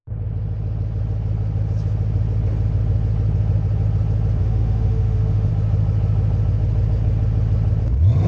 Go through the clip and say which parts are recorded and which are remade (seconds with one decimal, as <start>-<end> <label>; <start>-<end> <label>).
0.0-4.4 recorded; 4.4-5.5 remade; 5.5-8.3 recorded